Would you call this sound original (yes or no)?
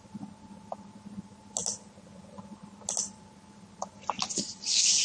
yes